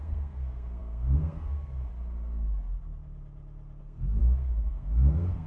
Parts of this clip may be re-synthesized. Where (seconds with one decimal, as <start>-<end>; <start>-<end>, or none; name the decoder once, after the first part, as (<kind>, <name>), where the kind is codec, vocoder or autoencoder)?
0.0-1.9 (codec, SNAC); 3.8-5.5